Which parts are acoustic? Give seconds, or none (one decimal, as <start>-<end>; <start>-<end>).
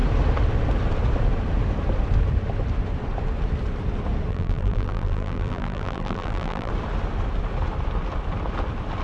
0.0-4.3; 6.7-9.0